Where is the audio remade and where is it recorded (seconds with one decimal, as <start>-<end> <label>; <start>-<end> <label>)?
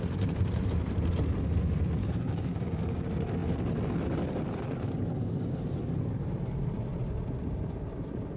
0.0-2.0 recorded; 2.0-3.0 remade; 3.0-8.4 recorded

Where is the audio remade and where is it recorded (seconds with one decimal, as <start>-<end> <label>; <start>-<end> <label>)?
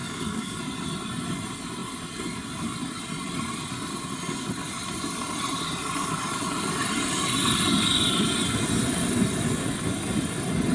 0.0-0.6 remade; 0.6-10.7 recorded